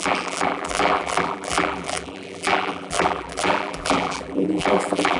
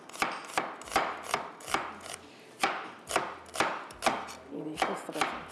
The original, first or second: second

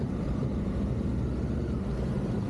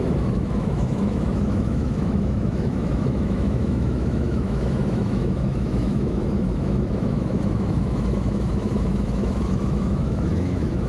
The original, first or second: first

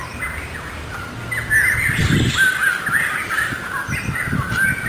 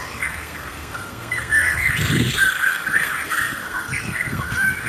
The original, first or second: first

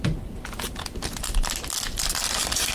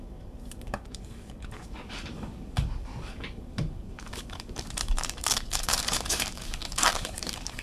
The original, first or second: first